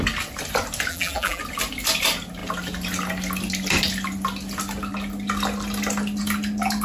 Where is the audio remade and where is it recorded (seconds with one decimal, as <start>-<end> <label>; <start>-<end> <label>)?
0.0-0.9 recorded; 0.9-1.4 remade; 1.4-6.8 recorded